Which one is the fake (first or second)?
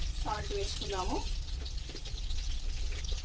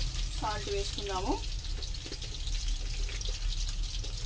first